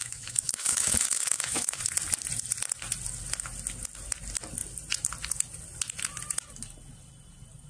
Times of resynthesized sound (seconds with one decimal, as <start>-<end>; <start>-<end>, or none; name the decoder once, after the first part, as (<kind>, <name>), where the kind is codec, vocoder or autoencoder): 0.0-1.8 (autoencoder, DAC-VAE)